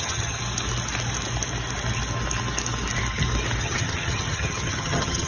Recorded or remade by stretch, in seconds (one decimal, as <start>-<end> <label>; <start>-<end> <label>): 0.0-0.4 remade; 0.4-3.6 recorded; 3.6-5.3 remade